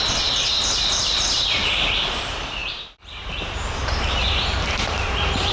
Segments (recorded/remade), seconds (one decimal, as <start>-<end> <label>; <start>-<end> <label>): 0.0-2.1 recorded; 2.1-5.5 remade